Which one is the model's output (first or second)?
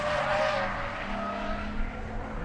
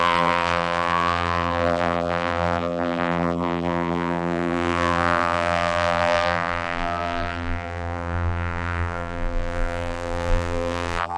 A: second